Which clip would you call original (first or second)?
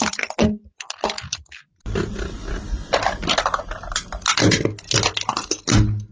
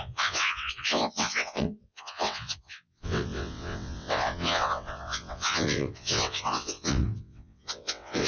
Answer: first